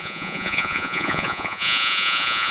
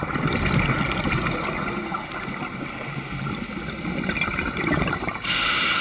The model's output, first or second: first